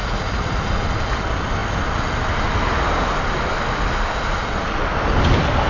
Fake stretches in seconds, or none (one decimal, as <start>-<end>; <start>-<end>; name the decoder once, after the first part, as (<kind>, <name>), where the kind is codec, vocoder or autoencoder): 0.0-0.6 (vocoder, Vocos)